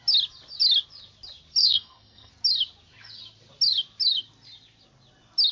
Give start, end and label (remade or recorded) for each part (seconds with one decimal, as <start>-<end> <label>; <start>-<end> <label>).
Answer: 0.0-1.6 recorded; 1.6-2.3 remade; 2.3-5.5 recorded